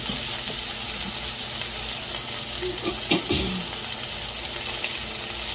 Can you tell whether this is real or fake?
real